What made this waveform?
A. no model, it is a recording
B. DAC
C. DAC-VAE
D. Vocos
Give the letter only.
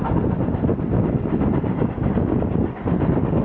A